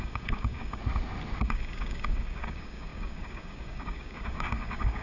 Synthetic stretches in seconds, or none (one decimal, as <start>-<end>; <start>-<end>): 0.0-0.8; 1.4-5.0